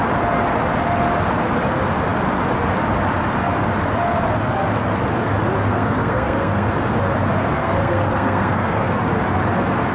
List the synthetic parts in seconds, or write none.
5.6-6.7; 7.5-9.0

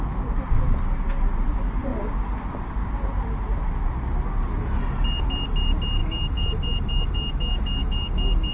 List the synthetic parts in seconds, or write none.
6.0-8.5

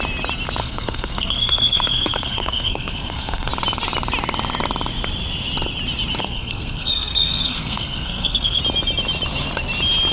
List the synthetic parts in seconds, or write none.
0.6-3.5; 6.2-8.6